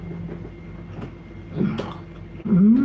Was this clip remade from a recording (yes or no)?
no